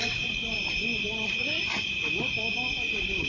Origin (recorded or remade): recorded